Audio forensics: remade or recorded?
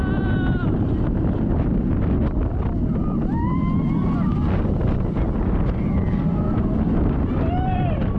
recorded